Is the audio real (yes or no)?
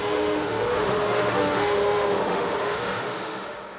no